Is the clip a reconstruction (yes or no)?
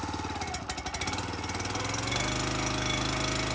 no